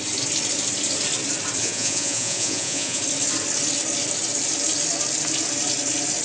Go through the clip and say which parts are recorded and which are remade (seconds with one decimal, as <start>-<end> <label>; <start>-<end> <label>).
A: 0.0-1.6 recorded; 1.6-3.0 remade; 3.0-6.2 recorded